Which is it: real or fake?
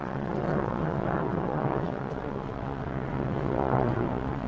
fake